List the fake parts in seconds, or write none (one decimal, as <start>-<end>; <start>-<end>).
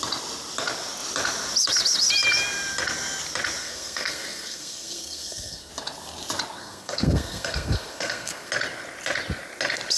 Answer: 3.6-5.7; 6.6-8.5